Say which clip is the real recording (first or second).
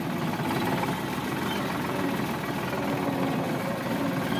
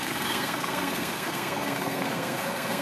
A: first